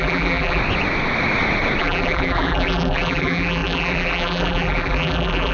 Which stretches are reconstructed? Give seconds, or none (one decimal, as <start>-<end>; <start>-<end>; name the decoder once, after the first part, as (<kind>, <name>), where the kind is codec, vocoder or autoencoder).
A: 0.0-0.6 (vocoder, BigVGAN v2); 1.8-5.5